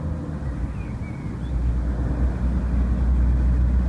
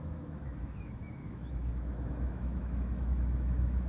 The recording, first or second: first